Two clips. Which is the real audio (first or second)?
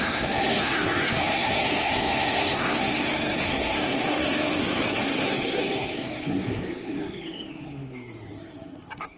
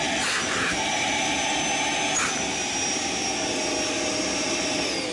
second